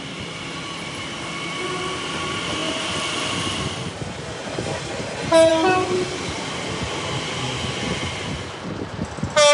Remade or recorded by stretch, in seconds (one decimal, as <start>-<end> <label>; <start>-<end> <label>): 0.0-9.5 recorded